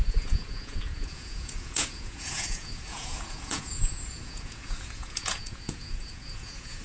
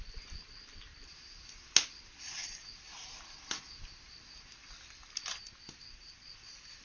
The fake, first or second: first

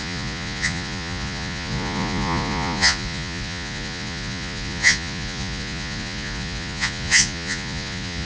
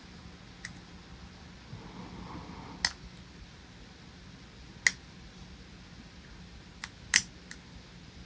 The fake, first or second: first